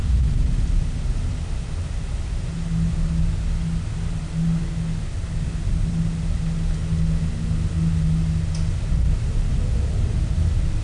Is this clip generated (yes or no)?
no